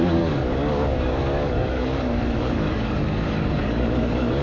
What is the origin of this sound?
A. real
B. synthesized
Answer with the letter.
B